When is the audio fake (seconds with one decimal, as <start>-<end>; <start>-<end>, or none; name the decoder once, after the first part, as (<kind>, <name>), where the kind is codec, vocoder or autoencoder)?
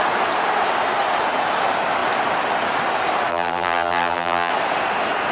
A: 3.3-4.5 (vocoder, BigVGAN v2)